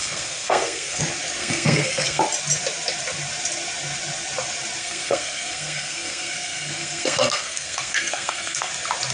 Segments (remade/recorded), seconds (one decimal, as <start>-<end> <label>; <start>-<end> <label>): 0.0-1.0 remade; 1.0-1.4 recorded; 1.4-2.2 remade; 2.2-4.8 recorded; 4.8-8.7 remade; 8.7-9.1 recorded

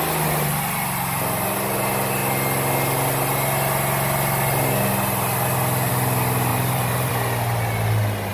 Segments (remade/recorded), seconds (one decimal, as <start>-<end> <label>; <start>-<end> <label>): 0.0-6.5 recorded; 6.5-7.1 remade; 7.1-8.3 recorded

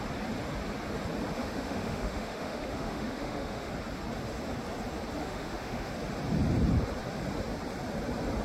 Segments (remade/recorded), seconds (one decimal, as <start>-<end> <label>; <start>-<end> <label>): 0.0-1.3 recorded; 1.3-3.7 remade; 3.7-5.2 recorded; 5.2-5.9 remade; 5.9-8.4 recorded

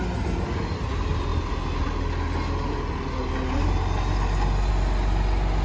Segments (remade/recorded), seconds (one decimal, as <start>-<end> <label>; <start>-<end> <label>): 0.0-5.6 recorded